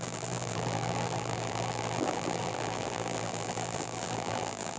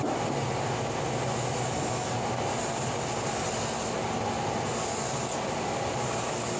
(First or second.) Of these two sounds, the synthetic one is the first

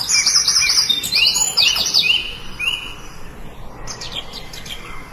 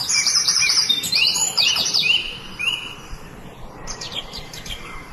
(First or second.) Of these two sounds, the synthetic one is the second